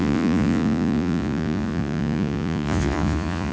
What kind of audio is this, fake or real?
fake